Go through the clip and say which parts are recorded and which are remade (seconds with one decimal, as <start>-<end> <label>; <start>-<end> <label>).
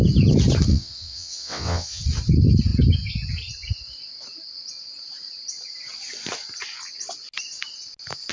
0.0-0.7 recorded; 0.7-2.0 remade; 2.0-8.3 recorded